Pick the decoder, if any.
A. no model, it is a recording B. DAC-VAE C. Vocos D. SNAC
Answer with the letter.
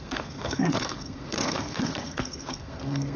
D